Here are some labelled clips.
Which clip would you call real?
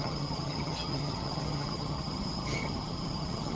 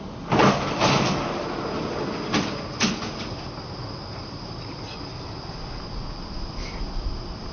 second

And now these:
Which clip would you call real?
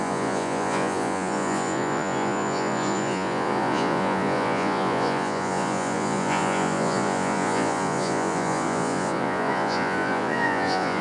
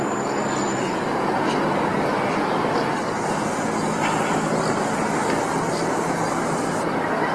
second